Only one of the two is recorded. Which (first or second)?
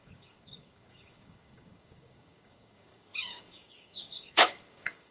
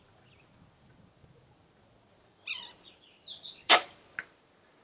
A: second